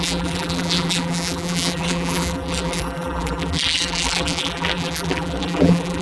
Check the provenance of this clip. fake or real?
fake